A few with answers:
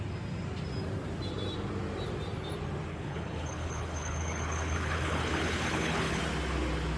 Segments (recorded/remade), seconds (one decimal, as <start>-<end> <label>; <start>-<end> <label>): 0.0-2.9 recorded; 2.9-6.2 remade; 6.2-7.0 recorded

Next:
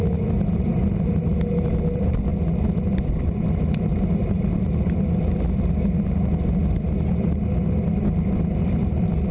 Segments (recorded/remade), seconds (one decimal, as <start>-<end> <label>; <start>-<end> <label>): 0.0-4.2 recorded; 4.2-5.1 remade; 5.1-9.3 recorded

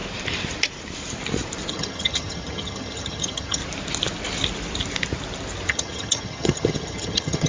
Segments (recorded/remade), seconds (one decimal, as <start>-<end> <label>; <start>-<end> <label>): 0.0-1.7 recorded; 1.7-3.6 remade; 3.6-5.7 recorded; 5.7-7.5 remade

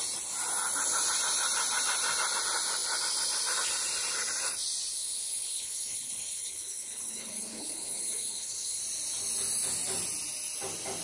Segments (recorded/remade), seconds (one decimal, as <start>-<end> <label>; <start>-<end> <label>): 0.0-4.9 recorded; 4.9-8.8 remade; 8.8-11.0 recorded